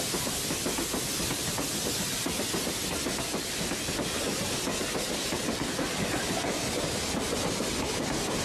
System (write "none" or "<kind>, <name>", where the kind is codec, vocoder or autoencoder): none